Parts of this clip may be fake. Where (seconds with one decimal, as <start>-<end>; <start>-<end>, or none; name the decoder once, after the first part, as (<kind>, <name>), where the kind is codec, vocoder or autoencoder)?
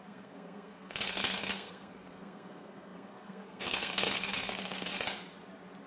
0.0-4.9 (codec, SNAC)